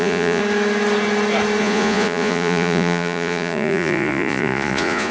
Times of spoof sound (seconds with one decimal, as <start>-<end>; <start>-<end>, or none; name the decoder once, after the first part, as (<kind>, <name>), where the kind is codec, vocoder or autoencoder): 0.0-0.4 (vocoder, Vocos); 1.6-5.1